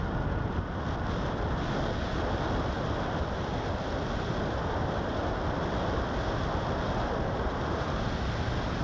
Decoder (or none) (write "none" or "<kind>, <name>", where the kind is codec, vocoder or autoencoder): none